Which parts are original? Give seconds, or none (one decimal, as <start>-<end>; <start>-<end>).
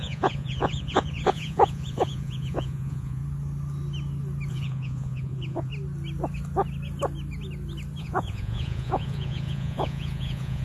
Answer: 3.2-4.5; 5.7-8.0